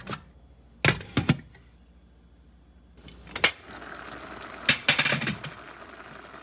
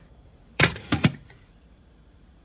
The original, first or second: first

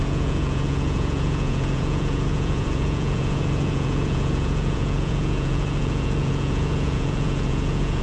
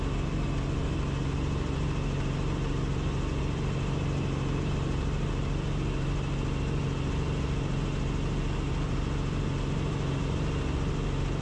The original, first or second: second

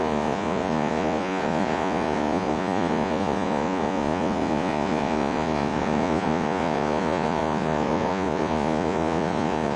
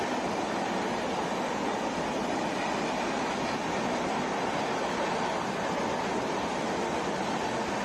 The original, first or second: second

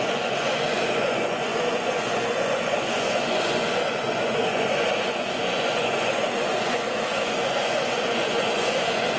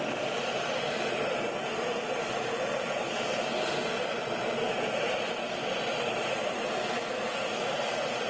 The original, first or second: second